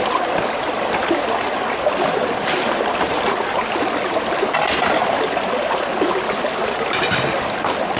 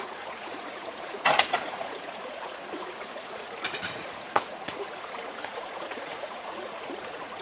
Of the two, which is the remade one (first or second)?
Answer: second